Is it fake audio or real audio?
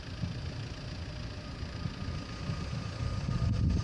real